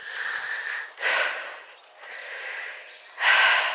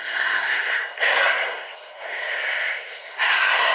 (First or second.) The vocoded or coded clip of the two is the second